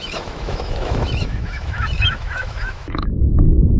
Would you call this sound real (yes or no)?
no